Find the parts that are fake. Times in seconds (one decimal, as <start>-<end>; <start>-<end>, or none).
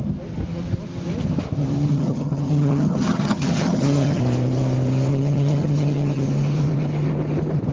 1.9-4.2; 5.1-6.3